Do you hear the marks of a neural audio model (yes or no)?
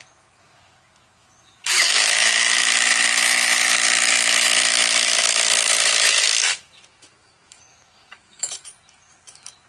yes